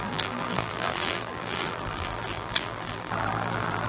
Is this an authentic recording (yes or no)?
no